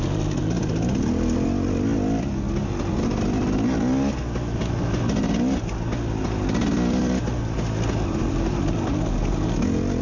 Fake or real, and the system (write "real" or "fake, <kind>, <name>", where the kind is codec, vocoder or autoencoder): real